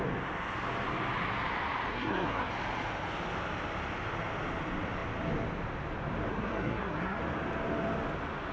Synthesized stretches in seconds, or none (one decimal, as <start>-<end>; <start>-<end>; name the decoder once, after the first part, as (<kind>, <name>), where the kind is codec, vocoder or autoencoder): 1.9-2.5 (codec, SNAC); 6.3-7.2